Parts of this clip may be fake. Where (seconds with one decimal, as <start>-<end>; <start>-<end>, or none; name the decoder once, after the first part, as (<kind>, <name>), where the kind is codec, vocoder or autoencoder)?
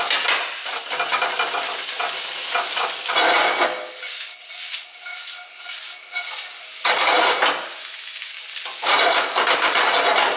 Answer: 7.8-8.3 (autoencoder, DAC-VAE)